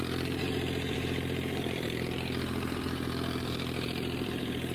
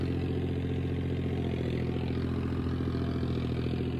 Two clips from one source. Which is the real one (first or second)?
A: second